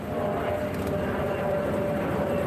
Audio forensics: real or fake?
real